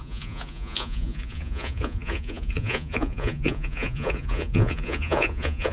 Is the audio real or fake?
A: fake